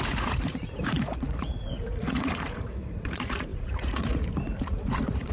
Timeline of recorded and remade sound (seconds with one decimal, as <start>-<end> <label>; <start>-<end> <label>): 0.0-5.3 remade